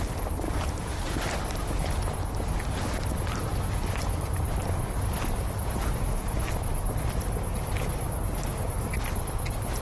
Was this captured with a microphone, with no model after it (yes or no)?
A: yes